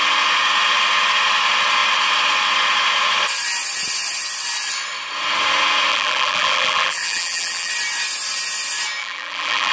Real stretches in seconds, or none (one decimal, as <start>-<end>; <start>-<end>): 0.0-5.9; 7.7-9.0